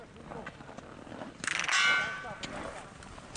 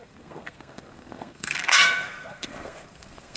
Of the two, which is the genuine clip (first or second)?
first